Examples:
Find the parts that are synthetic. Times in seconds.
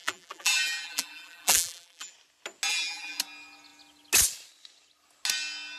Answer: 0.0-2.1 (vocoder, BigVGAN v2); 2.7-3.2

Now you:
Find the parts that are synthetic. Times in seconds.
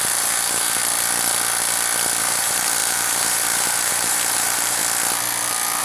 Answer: 0.0-0.8 (vocoder, BigVGAN v2); 2.2-4.8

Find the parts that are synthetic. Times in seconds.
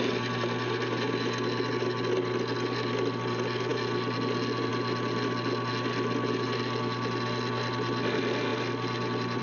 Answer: none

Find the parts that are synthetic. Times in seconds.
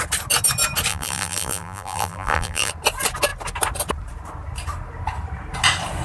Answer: 0.9-2.7 (vocoder, BigVGAN v2)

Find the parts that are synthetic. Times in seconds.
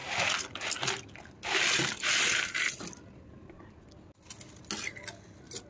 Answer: none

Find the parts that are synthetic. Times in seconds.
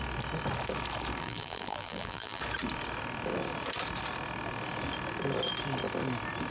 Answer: 1.2-2.4 (vocoder, BigVGAN v2)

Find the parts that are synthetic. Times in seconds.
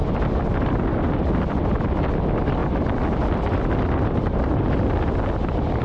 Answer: none